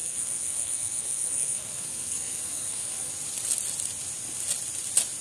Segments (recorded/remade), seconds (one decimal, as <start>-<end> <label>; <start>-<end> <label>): 0.0-3.1 remade; 3.1-5.2 recorded